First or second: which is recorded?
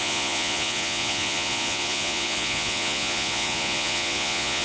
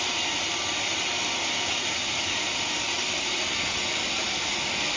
second